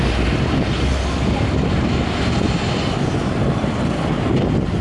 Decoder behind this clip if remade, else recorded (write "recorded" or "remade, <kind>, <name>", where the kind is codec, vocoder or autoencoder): recorded